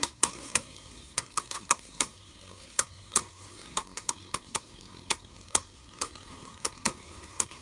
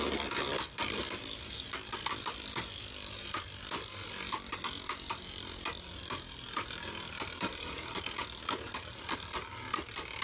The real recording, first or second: second